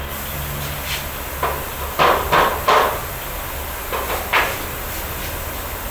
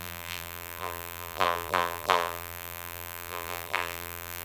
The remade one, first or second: second